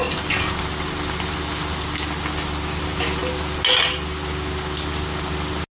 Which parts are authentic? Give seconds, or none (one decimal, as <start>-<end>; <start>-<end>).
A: 0.0-5.8

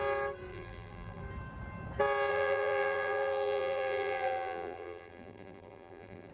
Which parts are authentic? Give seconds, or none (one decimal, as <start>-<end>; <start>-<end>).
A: 0.0-0.5; 1.2-2.3

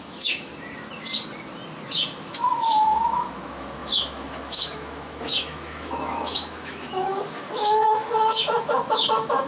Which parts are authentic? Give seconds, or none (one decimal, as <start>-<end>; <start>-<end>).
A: 0.5-2.2

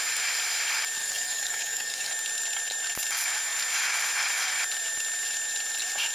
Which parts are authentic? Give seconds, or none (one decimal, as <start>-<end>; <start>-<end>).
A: 0.0-1.0; 2.1-6.1

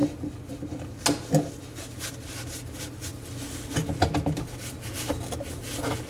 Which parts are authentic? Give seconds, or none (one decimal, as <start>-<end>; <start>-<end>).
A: 0.0-6.1

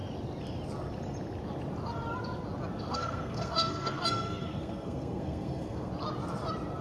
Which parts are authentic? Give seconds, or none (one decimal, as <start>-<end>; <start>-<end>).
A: 0.0-2.9; 5.9-6.8

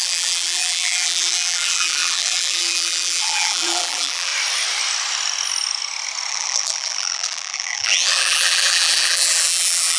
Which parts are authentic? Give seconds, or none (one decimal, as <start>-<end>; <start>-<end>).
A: 4.3-6.3

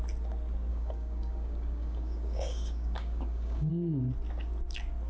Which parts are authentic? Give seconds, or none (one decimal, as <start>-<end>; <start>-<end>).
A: 0.0-0.7; 3.7-5.1